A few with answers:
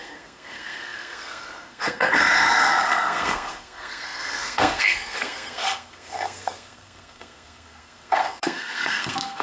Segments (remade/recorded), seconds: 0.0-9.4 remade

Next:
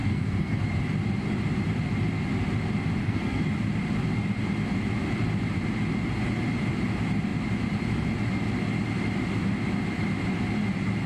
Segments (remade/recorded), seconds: 0.0-0.6 remade; 0.6-3.0 recorded; 3.0-3.5 remade; 3.5-11.1 recorded

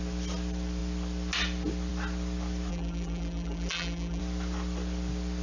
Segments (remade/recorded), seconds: 0.0-2.7 recorded; 2.7-4.2 remade; 4.2-5.4 recorded

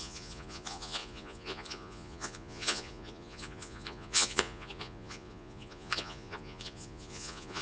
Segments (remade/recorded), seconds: 0.0-7.6 remade

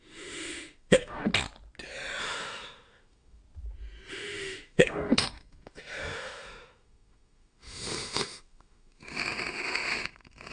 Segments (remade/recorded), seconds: 0.0-1.3 remade; 1.3-2.2 recorded; 2.2-3.4 remade; 3.4-4.1 recorded; 4.1-10.5 remade

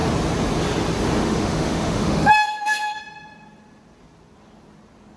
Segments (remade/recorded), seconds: 0.0-1.2 recorded; 1.2-3.0 remade; 3.0-5.2 recorded

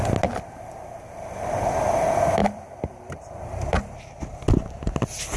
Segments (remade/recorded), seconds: 0.0-2.4 recorded; 2.4-4.2 remade; 4.2-5.4 recorded

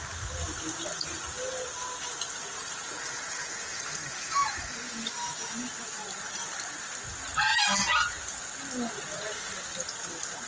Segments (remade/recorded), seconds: 0.0-2.8 recorded; 2.8-4.6 remade; 4.6-10.5 recorded